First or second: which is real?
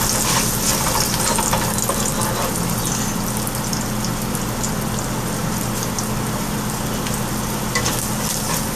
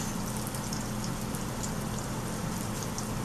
first